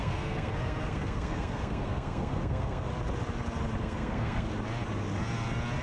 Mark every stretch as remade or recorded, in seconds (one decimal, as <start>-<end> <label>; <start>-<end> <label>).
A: 0.0-2.9 remade; 2.9-3.8 recorded; 3.8-4.5 remade; 4.5-5.8 recorded